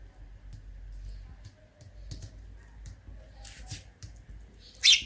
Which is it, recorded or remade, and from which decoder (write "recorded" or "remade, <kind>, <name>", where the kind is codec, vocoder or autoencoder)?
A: recorded